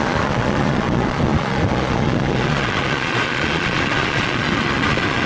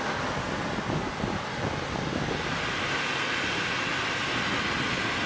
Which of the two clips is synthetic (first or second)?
first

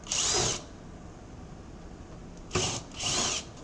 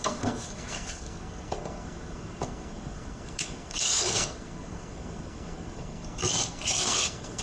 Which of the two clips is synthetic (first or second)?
second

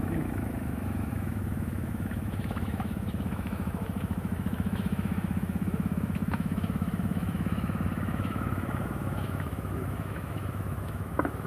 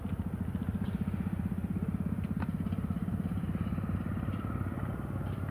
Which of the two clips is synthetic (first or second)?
first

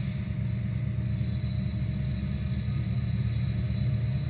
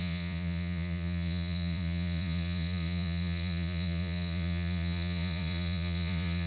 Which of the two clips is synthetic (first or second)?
second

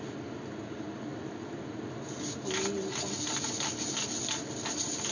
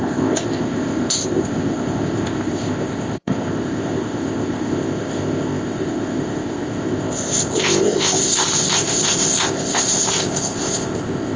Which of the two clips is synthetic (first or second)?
second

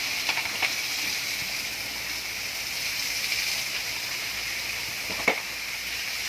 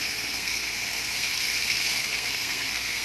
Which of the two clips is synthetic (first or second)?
second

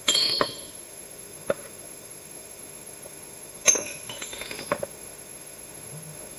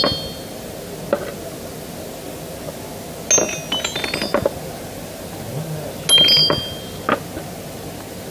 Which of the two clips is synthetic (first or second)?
first